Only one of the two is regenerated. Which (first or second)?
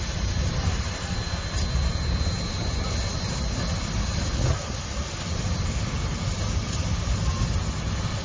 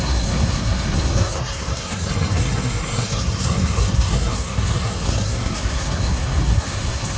second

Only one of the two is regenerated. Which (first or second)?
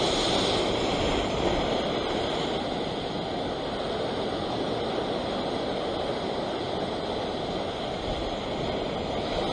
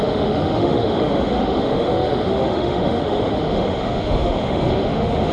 second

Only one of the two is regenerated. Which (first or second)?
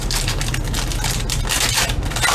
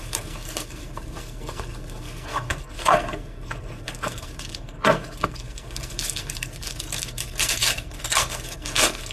second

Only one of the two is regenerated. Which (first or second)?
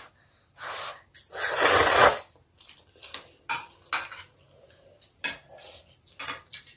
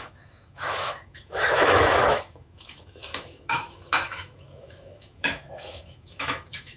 second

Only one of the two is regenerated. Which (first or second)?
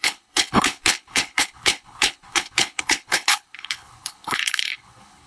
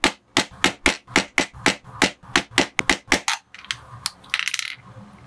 first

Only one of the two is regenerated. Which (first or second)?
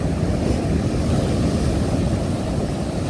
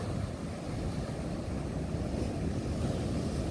first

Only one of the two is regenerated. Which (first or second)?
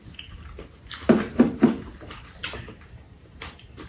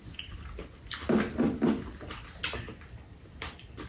first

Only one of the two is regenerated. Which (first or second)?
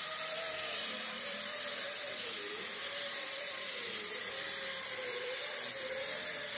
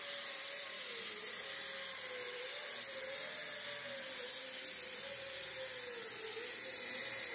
first